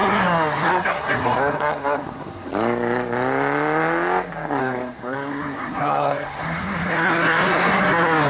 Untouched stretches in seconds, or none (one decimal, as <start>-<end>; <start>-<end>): 2.5-4.6